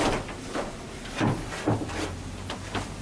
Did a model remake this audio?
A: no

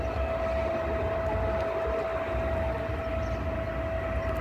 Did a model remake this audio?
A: no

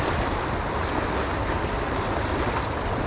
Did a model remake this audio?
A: no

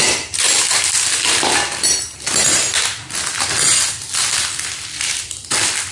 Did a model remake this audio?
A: no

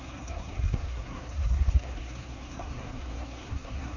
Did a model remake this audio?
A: yes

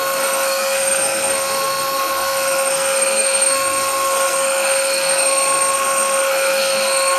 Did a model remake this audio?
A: yes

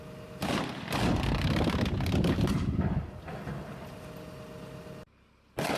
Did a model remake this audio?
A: no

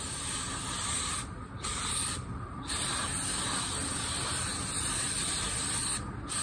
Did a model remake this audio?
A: no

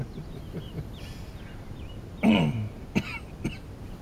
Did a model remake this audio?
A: no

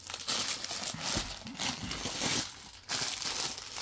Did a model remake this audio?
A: no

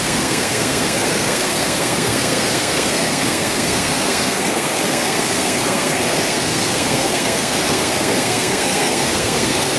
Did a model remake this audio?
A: yes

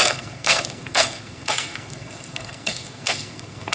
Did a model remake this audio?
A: yes